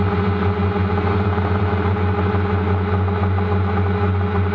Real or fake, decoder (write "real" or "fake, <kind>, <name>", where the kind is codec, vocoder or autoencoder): real